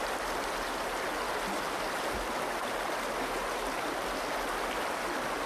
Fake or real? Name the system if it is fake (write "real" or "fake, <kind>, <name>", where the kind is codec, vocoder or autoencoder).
real